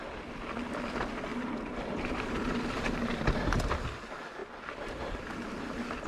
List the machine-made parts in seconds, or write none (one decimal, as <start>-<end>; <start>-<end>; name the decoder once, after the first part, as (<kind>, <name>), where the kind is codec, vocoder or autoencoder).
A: 1.3-3.2 (vocoder, BigVGAN v2)